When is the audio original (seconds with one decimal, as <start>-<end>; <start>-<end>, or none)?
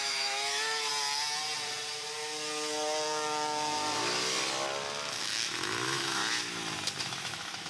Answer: 0.9-5.1; 6.2-7.0